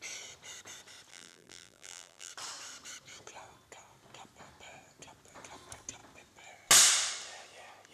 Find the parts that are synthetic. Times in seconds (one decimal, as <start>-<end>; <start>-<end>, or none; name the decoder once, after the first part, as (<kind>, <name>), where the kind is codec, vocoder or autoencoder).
1.1-2.3 (vocoder, BigVGAN v2)